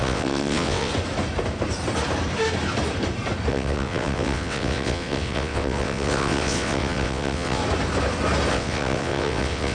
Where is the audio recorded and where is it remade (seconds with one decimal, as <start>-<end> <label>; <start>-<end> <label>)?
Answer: 0.0-0.9 remade; 0.9-3.5 recorded; 3.5-7.6 remade; 7.6-8.5 recorded; 8.5-9.7 remade